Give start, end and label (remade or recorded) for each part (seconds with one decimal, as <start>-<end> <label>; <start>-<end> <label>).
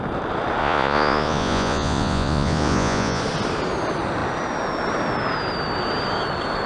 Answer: 0.0-0.6 recorded; 0.6-3.2 remade; 3.2-6.7 recorded